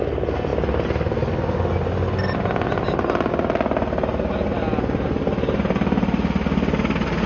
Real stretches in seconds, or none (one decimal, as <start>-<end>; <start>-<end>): 0.0-7.3